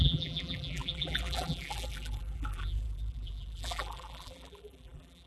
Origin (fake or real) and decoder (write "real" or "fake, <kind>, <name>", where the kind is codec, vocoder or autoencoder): fake, vocoder, BigVGAN v2